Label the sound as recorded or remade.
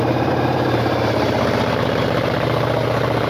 remade